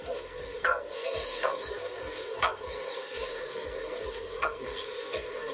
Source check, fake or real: fake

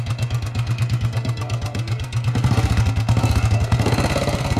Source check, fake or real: fake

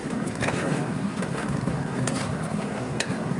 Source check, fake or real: fake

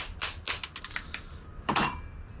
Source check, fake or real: real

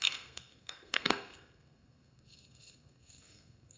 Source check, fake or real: fake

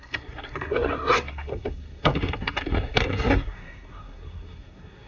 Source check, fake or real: fake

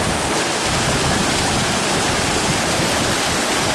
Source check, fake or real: real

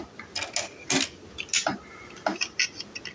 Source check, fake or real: real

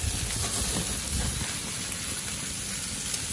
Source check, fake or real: real